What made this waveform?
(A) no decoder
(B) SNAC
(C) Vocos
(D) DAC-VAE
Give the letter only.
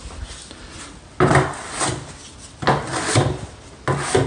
A